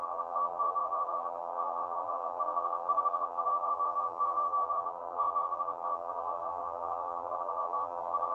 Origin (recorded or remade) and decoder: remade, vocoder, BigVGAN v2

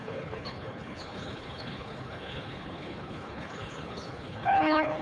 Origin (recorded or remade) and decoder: remade, codec, HILCodec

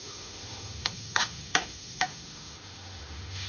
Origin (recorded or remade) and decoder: remade, autoencoder, DAC-VAE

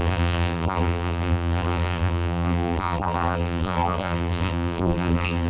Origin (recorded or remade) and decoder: remade, vocoder, BigVGAN v2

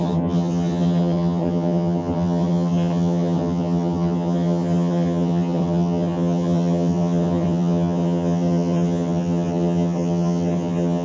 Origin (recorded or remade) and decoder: remade, vocoder, HiFi-GAN